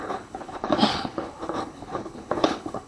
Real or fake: fake